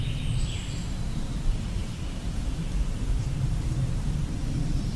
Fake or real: fake